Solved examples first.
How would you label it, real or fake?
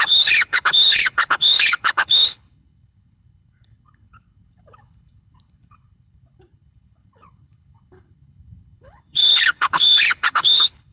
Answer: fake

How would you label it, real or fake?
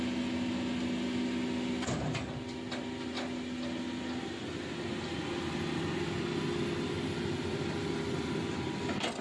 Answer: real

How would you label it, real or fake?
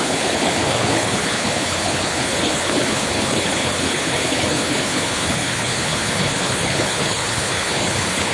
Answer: fake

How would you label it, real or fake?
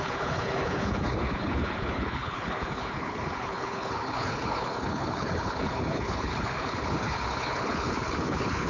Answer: fake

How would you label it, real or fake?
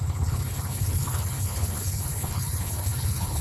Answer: fake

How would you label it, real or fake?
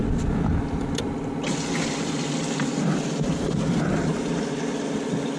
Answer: real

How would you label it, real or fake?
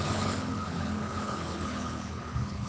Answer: fake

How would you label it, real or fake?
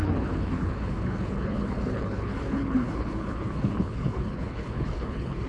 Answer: fake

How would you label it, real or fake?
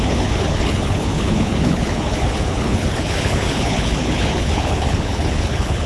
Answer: fake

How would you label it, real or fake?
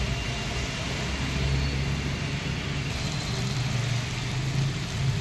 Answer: real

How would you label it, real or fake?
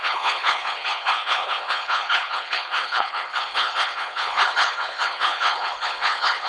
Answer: fake